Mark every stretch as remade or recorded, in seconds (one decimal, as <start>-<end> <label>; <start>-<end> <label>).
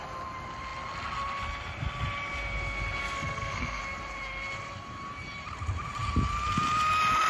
0.0-3.0 recorded; 3.0-3.8 remade; 3.8-7.3 recorded